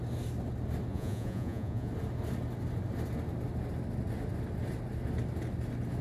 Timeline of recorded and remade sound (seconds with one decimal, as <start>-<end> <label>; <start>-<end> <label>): 0.0-0.9 recorded; 0.9-1.9 remade; 1.9-6.0 recorded